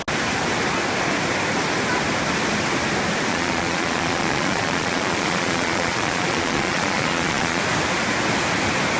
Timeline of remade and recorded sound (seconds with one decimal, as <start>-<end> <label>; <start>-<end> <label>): 0.0-3.3 recorded; 3.3-7.6 remade; 7.6-9.0 recorded